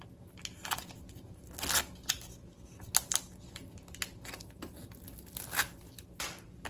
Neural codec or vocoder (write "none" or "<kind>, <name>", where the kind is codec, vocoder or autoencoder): none